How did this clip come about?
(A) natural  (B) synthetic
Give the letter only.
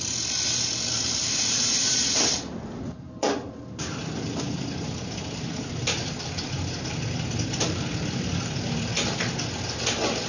A